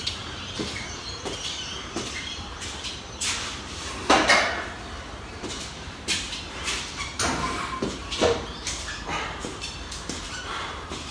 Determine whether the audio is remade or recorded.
remade